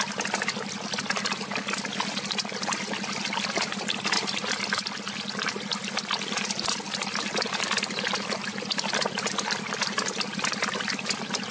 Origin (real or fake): real